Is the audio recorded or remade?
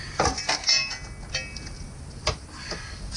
recorded